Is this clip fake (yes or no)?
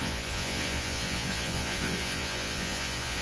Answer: yes